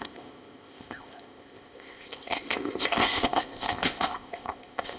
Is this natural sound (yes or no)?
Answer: no